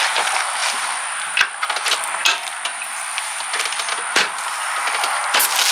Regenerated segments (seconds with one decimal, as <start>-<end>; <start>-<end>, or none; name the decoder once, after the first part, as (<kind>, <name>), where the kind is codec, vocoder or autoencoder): none